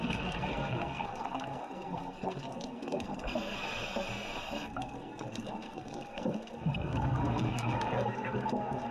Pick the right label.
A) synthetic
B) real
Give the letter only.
A